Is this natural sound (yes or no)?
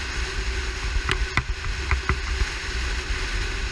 yes